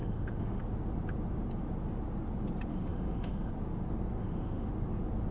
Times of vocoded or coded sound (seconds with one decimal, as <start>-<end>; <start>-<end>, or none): 0.0-0.6; 2.7-3.5; 4.2-4.7